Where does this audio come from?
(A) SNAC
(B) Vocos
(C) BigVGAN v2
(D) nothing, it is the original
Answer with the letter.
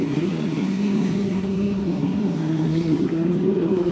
A